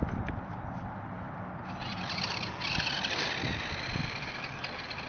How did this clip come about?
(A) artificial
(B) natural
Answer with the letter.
B